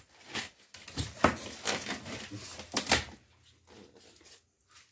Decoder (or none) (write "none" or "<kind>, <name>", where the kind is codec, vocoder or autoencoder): none